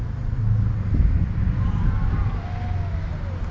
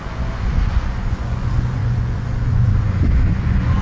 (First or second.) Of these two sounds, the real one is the first